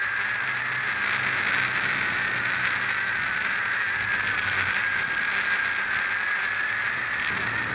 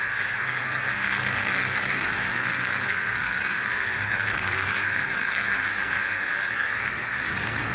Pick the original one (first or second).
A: first